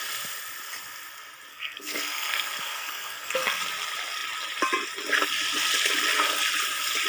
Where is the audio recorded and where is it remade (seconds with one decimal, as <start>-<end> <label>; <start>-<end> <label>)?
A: 0.0-1.5 recorded; 1.5-3.6 remade; 3.6-7.1 recorded